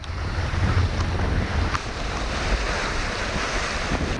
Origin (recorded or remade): recorded